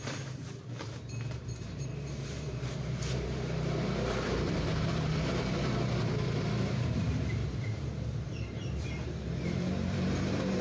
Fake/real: fake